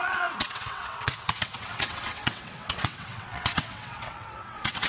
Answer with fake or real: fake